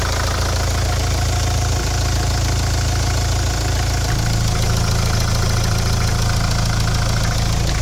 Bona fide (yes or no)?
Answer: yes